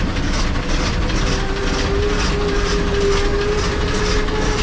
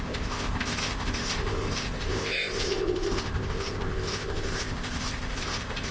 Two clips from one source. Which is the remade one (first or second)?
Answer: second